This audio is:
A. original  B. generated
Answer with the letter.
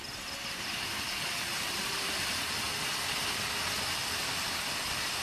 A